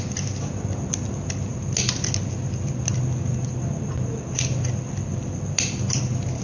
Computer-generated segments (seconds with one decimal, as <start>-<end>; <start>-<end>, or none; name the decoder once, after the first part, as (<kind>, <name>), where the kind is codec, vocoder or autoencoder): 5.1-6.0 (vocoder, BigVGAN v2)